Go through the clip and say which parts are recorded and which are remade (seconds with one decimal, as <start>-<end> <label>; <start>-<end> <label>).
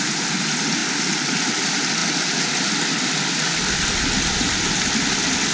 0.0-5.5 recorded